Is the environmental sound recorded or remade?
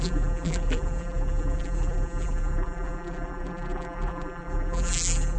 remade